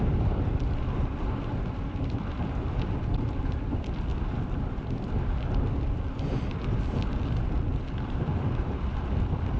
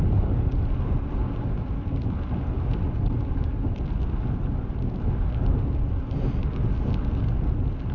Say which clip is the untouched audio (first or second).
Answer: second